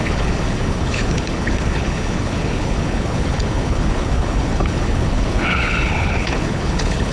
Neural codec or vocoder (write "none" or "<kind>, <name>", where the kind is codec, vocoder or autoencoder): codec, HILCodec